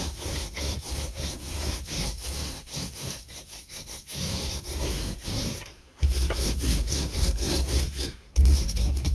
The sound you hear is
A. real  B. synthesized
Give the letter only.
B